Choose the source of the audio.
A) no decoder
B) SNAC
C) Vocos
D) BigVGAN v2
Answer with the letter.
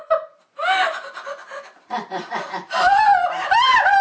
A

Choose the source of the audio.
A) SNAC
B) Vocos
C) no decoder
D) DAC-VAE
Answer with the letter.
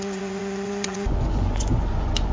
B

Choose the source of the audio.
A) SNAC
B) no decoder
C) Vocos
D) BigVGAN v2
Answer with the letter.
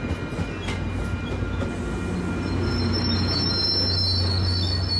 B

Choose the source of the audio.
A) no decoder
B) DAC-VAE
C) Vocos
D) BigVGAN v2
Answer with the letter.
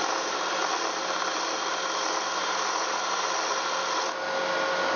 A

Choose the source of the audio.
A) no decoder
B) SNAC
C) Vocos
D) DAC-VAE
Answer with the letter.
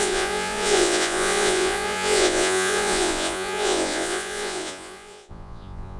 C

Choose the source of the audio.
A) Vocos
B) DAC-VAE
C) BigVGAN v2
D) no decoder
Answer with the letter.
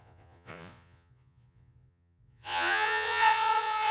A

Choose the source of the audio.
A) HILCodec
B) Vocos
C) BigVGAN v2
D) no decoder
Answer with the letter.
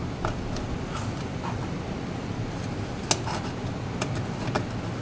D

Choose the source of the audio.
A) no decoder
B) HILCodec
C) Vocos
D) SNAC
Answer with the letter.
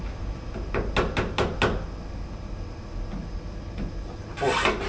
A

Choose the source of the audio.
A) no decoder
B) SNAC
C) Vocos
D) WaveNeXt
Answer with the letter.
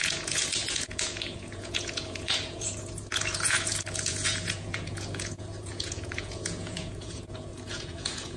C